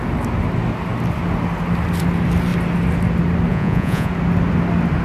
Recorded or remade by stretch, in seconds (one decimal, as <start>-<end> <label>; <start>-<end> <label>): 0.0-3.5 recorded; 3.5-4.1 remade; 4.1-5.0 recorded